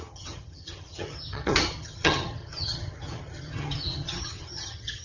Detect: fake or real fake